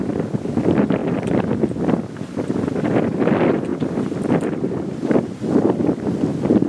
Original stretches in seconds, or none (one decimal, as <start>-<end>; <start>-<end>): 1.0-2.3